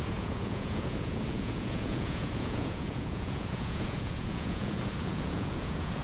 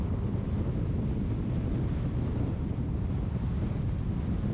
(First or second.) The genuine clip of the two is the second